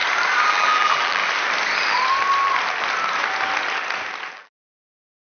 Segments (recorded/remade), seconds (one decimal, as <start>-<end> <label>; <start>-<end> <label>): 0.0-0.5 recorded; 0.5-1.2 remade; 1.2-4.3 recorded; 4.3-5.2 remade